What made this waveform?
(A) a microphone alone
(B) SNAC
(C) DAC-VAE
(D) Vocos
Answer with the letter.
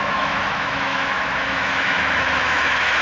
C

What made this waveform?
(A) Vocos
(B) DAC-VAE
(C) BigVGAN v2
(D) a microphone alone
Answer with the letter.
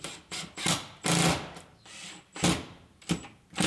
D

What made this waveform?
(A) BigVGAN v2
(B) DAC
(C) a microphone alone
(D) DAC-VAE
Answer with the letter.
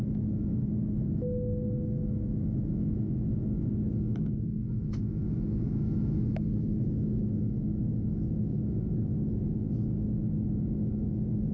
D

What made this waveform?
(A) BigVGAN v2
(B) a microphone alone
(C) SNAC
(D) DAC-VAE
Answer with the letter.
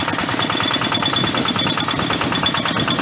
B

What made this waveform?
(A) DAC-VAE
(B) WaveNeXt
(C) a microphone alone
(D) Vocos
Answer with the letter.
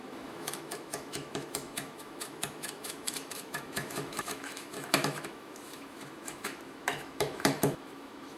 A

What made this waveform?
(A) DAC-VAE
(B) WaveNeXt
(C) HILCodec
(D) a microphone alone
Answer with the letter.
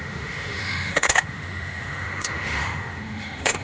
A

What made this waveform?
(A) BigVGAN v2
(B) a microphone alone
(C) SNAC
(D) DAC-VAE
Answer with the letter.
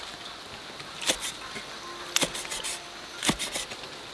B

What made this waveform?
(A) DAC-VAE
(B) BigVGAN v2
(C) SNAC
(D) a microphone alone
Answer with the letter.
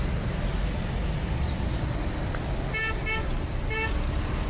D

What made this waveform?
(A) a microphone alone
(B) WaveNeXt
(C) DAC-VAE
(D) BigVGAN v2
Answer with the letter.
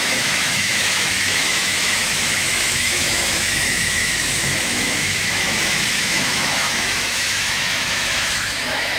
C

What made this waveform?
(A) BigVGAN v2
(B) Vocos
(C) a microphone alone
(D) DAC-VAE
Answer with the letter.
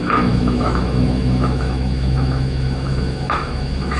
D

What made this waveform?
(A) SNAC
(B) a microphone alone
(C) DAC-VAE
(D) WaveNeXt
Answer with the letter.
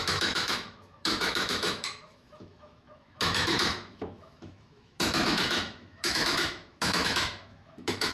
C